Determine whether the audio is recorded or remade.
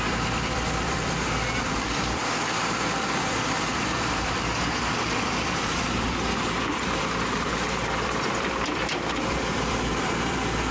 remade